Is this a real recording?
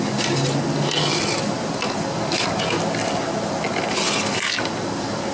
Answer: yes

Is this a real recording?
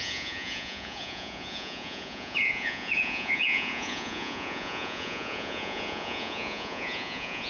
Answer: no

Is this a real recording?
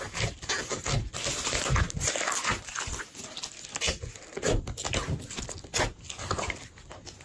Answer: yes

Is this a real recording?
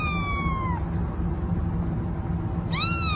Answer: yes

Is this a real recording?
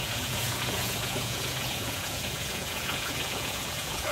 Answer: no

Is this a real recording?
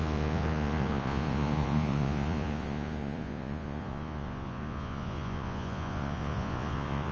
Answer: no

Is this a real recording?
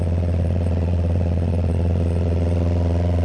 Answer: no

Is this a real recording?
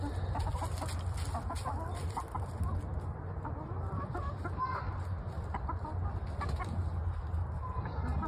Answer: yes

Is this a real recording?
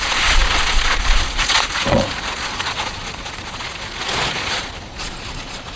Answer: no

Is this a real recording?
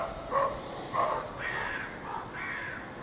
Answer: yes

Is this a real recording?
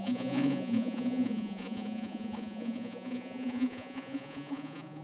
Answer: no